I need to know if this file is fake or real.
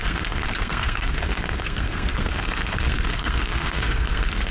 fake